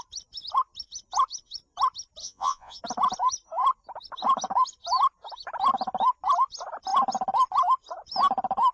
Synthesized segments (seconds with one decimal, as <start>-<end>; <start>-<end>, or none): 2.2-2.8